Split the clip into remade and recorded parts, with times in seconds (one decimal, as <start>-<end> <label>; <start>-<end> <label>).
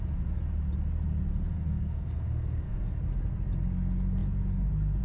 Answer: 0.0-1.3 recorded; 1.3-3.0 remade; 3.0-5.0 recorded